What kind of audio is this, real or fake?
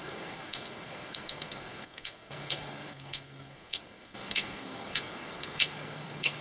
fake